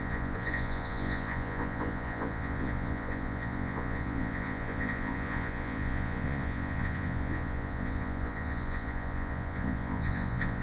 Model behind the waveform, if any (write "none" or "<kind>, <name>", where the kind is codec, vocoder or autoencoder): vocoder, Vocos